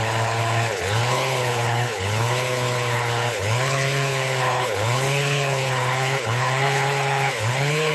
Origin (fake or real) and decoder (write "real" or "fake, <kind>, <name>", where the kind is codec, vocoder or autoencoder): fake, codec, HILCodec